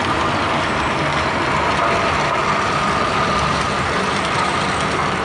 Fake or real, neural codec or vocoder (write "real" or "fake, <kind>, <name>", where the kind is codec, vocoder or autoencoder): real